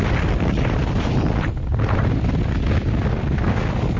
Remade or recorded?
recorded